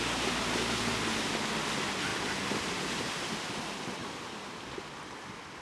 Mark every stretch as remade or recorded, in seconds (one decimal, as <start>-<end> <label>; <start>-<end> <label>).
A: 0.0-5.6 recorded

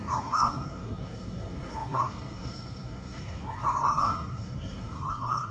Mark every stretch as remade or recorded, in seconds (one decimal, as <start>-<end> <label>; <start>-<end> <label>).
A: 0.0-5.5 remade